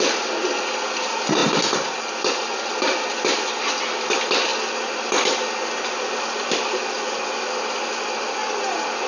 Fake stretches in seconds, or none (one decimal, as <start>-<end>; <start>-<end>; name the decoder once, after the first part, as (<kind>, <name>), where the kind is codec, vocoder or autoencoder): none